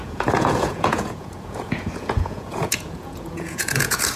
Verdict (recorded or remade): remade